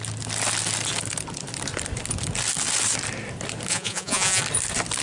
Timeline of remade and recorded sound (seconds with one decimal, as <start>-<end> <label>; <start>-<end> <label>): 0.0-3.7 recorded; 3.7-4.4 remade; 4.4-5.0 recorded